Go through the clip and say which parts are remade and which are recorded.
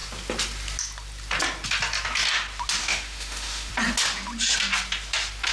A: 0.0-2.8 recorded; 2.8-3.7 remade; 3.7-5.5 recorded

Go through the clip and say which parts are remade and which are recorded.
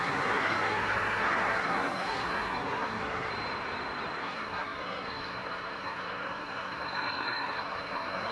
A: 0.0-3.3 remade; 3.3-4.2 recorded; 4.2-8.3 remade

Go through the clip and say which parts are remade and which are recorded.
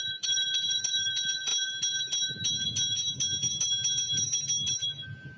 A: 0.0-1.5 remade; 1.5-4.7 recorded; 4.7-5.4 remade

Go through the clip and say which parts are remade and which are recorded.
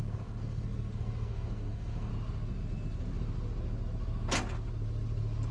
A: 0.0-2.1 remade; 2.1-5.5 recorded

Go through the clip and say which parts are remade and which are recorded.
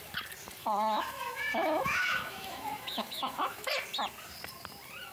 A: 0.0-0.6 recorded; 0.6-3.7 remade; 3.7-5.1 recorded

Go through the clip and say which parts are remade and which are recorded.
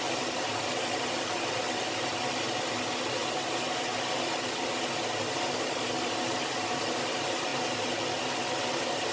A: 0.0-9.1 recorded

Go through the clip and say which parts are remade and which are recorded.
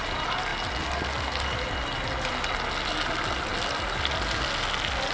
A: 0.0-5.1 recorded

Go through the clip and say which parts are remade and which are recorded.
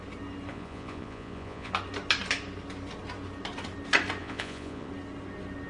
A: 0.0-0.5 recorded; 0.5-1.7 remade; 1.7-4.2 recorded; 4.2-4.9 remade; 4.9-5.7 recorded